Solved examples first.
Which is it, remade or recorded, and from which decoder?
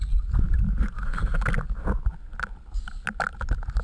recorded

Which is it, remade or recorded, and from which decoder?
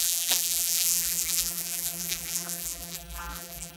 remade, vocoder, BigVGAN v2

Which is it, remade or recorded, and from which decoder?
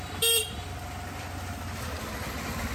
recorded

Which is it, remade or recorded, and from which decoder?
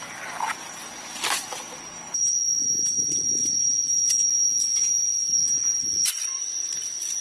remade, vocoder, BigVGAN v2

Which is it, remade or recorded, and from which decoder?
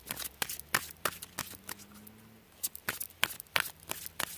recorded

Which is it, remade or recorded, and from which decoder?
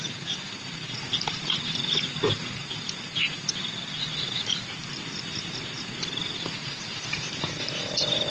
remade, vocoder, BigVGAN v2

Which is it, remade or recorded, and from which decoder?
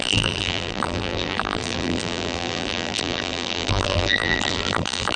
remade, vocoder, BigVGAN v2